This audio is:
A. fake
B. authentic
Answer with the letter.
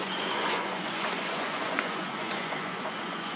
A